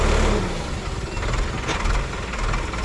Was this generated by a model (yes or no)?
no